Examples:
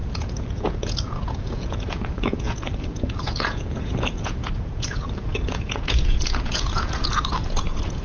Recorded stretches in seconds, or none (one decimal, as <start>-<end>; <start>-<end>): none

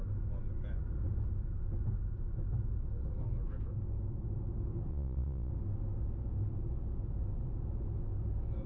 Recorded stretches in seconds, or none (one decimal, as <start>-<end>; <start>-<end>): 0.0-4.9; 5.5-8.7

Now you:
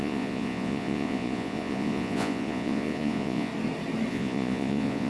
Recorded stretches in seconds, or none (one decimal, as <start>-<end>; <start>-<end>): 3.5-4.1

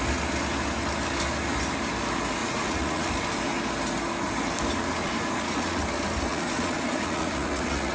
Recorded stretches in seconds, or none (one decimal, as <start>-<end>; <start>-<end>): 0.0-2.4; 3.1-5.0; 5.8-6.3

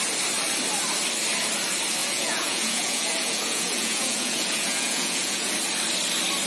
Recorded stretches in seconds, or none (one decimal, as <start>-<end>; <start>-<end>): 0.0-2.0; 5.5-6.5

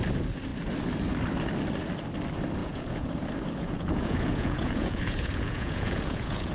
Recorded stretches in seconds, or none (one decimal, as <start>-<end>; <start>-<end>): 0.0-2.6; 3.1-3.6